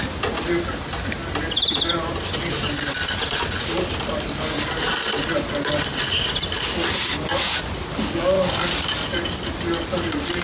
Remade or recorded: recorded